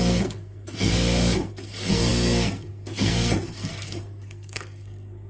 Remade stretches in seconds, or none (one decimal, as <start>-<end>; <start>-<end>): 0.0-5.3